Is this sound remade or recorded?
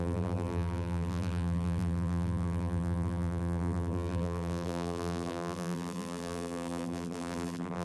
remade